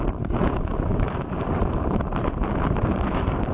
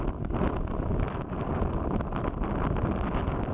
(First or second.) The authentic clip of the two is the second